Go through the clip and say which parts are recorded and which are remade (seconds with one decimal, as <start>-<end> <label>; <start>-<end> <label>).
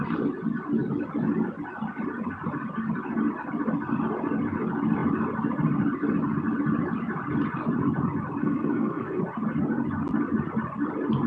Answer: 0.0-8.4 recorded; 8.4-9.2 remade; 9.2-11.3 recorded